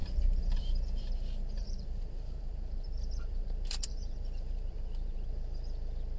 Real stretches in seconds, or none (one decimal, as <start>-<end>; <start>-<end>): 0.0-1.6; 5.3-6.2